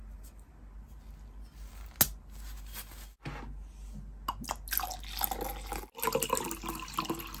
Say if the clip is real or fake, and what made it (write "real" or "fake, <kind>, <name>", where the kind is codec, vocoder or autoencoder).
real